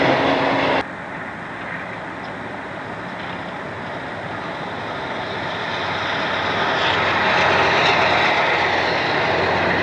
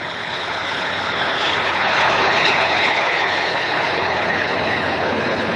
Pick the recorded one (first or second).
first